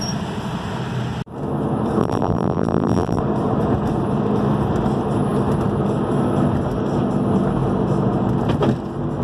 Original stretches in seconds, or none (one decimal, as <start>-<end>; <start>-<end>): 0.0-2.0; 3.2-9.2